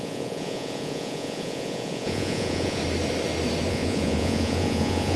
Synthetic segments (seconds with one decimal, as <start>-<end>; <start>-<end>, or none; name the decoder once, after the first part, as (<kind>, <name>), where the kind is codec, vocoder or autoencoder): 0.0-2.8 (vocoder, Vocos); 3.7-5.2